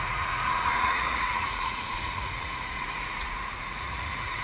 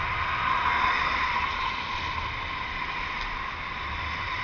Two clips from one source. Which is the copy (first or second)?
first